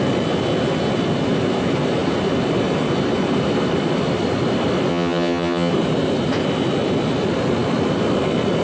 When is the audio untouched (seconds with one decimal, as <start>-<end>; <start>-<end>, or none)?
0.0-4.9; 5.7-8.6

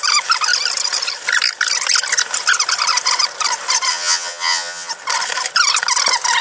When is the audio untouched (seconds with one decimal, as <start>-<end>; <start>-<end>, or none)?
0.0-3.9; 4.9-6.4

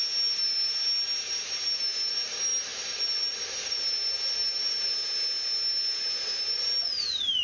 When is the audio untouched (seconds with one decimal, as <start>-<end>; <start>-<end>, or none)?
0.0-7.4

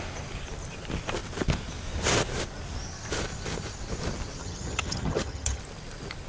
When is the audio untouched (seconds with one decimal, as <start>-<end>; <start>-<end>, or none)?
0.0-4.4; 5.6-6.3

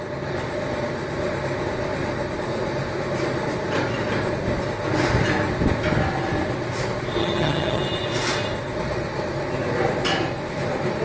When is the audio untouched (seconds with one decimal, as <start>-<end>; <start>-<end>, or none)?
0.0-7.2; 7.8-11.0

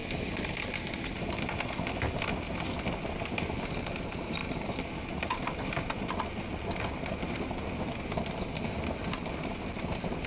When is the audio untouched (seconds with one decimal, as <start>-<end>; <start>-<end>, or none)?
0.0-10.3

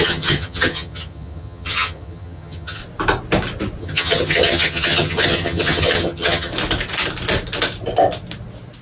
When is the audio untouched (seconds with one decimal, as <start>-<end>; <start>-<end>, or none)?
2.8-3.8; 6.5-8.8

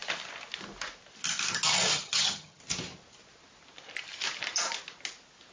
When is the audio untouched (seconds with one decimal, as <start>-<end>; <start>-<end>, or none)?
0.0-1.9; 2.6-5.5